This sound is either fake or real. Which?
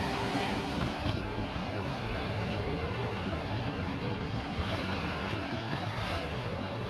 fake